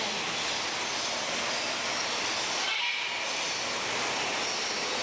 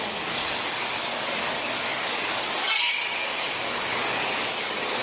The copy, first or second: second